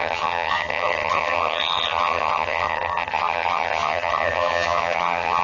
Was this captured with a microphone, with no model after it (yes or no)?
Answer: no